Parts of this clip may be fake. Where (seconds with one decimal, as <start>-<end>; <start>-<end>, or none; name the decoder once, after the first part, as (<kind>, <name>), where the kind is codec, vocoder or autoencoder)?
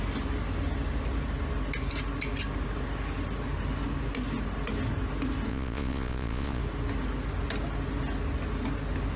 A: 5.5-6.6 (vocoder, Vocos)